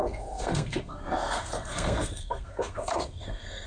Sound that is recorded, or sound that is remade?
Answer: remade